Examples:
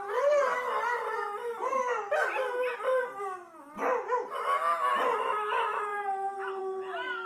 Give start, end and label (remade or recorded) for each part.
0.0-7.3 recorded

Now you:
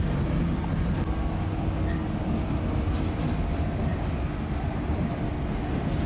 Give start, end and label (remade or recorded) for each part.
0.0-6.1 recorded

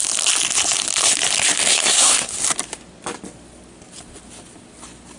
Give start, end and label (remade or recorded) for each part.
0.0-1.7 recorded; 1.7-2.3 remade; 2.3-5.2 recorded

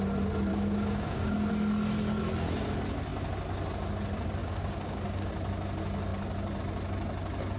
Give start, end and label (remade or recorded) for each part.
0.0-0.5 recorded; 0.5-1.5 remade; 1.5-4.4 recorded; 4.4-5.3 remade; 5.3-7.6 recorded